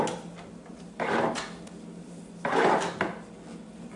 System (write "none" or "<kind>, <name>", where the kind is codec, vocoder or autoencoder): none